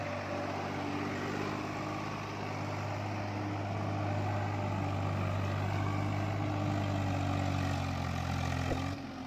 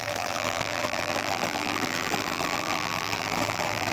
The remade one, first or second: second